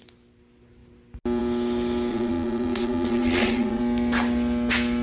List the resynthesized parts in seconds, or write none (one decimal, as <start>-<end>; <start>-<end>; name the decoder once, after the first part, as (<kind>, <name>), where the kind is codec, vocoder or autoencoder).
2.1-3.8 (vocoder, Vocos)